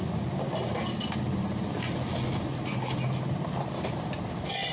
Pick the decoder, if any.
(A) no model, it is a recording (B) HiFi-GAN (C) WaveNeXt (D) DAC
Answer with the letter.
A